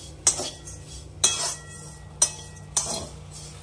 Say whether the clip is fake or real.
real